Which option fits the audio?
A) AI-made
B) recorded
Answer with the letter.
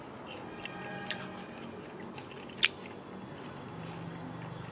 B